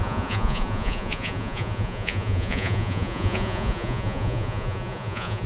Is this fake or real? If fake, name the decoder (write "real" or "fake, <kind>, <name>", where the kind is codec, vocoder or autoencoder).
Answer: fake, vocoder, Vocos